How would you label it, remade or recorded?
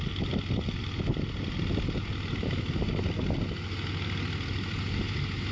recorded